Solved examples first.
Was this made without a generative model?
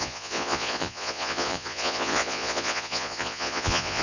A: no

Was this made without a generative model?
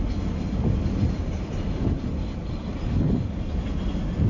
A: yes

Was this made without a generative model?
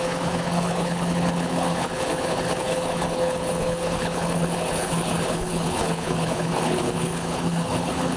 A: no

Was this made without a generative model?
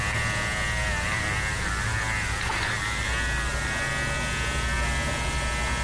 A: yes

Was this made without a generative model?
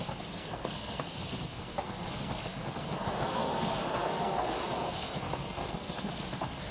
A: no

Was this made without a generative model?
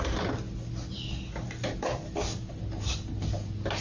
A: yes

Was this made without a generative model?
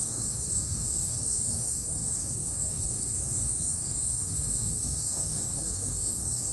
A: no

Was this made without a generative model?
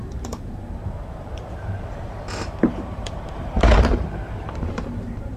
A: no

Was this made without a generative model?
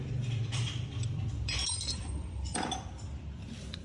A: no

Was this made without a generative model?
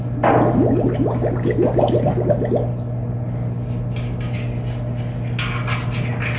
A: yes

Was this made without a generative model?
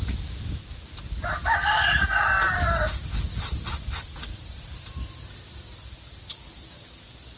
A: yes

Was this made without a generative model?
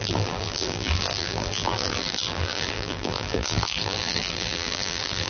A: no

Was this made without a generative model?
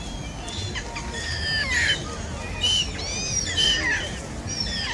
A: yes